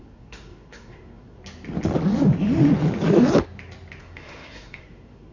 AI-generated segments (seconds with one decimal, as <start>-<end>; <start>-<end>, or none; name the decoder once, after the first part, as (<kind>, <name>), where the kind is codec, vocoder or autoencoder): 0.0-1.4 (codec, SNAC); 4.0-5.3